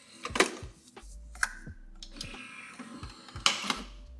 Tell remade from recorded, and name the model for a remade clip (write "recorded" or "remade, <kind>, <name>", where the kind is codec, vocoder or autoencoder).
recorded